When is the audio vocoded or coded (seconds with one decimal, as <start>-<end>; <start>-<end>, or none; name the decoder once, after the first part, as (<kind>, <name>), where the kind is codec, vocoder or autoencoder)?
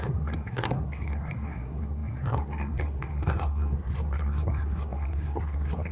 0.0-5.9 (codec, SNAC)